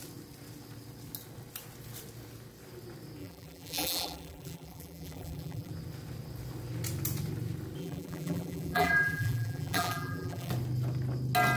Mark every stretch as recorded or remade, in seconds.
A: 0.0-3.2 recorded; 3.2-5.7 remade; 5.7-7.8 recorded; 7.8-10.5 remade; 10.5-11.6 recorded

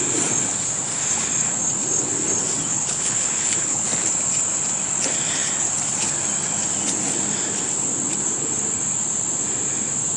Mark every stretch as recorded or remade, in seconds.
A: 0.0-2.7 recorded; 2.7-3.9 remade; 3.9-10.2 recorded

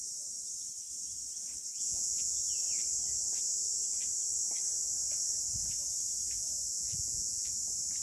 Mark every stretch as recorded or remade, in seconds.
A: 0.0-1.7 recorded; 1.7-2.4 remade; 2.4-6.7 recorded; 6.7-7.5 remade; 7.5-8.0 recorded

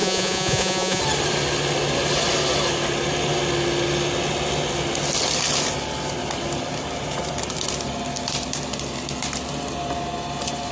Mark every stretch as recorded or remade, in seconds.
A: 0.0-1.0 remade; 1.0-10.7 recorded

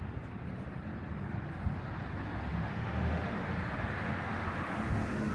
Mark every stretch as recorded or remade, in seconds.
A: 0.0-2.5 recorded; 2.5-3.5 remade; 3.5-4.0 recorded; 4.0-5.3 remade

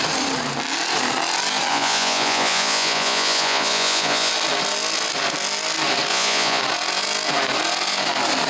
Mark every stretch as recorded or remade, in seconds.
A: 0.0-1.7 recorded; 1.7-4.3 remade; 4.3-6.1 recorded; 6.1-6.6 remade; 6.6-8.5 recorded